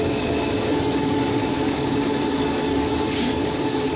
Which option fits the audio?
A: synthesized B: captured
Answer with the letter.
A